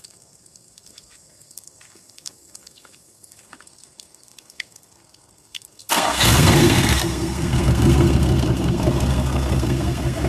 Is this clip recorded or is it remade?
remade